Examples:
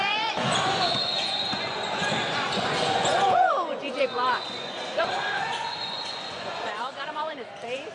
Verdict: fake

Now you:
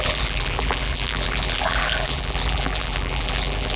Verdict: fake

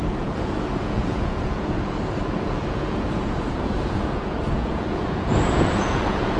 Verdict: fake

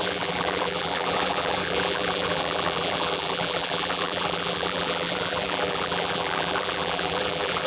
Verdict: fake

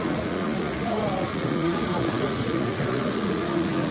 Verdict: fake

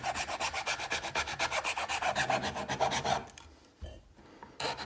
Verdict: real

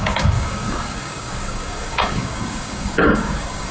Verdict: fake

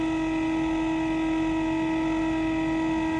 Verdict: real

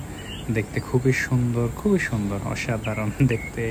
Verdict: real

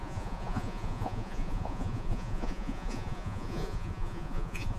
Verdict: fake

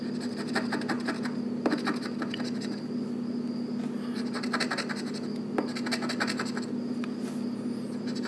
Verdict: real